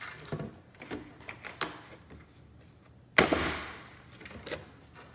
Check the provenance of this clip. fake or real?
real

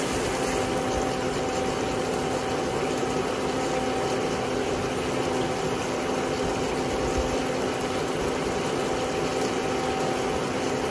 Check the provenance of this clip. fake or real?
real